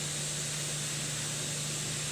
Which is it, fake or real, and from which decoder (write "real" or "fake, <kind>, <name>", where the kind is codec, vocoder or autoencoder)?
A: real